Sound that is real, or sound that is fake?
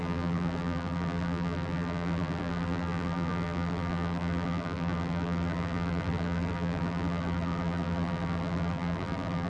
fake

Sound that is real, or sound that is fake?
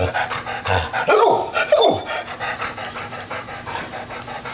real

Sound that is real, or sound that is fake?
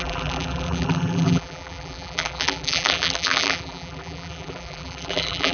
fake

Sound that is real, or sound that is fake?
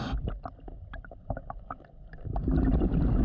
real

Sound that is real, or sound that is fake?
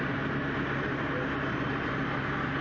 real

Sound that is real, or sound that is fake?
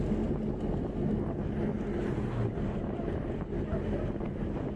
real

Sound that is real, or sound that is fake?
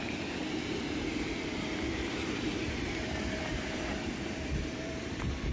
fake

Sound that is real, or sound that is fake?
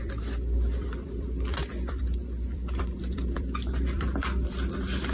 fake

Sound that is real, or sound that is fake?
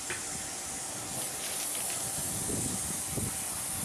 real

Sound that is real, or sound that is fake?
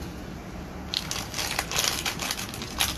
real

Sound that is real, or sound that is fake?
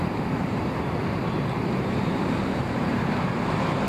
fake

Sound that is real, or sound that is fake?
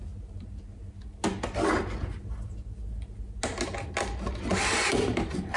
real